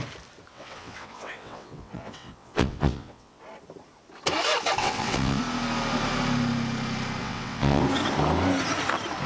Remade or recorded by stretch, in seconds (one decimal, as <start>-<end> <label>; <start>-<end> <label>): 0.0-0.5 recorded; 0.5-3.4 remade; 3.4-4.8 recorded; 4.8-5.4 remade; 5.4-7.2 recorded; 7.2-7.8 remade; 7.8-9.3 recorded